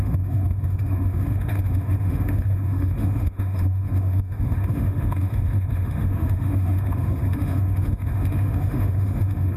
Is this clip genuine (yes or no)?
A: no